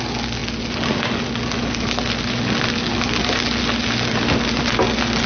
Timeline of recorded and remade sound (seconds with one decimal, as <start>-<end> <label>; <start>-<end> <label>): 0.0-5.3 recorded